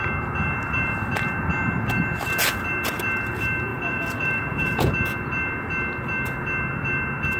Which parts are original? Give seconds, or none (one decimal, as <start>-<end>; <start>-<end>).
0.0-3.7; 4.9-7.4